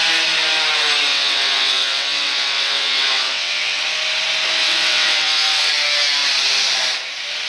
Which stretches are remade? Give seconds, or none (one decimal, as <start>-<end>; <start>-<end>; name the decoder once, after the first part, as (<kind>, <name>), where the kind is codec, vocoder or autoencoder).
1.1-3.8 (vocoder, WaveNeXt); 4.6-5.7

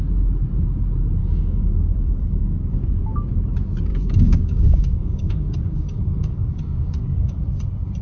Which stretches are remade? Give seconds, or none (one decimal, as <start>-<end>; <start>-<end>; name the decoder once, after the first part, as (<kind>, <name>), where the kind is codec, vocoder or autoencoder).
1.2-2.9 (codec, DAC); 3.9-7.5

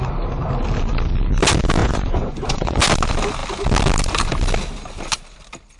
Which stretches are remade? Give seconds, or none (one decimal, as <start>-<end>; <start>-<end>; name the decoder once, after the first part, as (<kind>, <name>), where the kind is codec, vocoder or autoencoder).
1.8-2.8 (vocoder, Vocos)

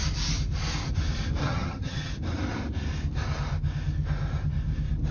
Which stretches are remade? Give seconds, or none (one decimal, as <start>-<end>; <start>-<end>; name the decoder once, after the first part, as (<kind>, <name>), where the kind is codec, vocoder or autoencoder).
1.4-2.1 (vocoder, HiFi-GAN)

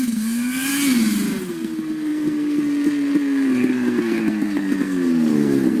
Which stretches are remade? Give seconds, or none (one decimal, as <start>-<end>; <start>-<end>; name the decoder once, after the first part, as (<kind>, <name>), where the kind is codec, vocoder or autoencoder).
0.0-0.7 (codec, SNAC); 1.5-5.8

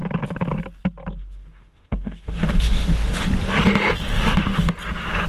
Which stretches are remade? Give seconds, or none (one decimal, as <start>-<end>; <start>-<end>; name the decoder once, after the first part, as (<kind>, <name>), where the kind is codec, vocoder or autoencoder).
1.2-3.3 (autoencoder, DAC-VAE); 4.1-4.7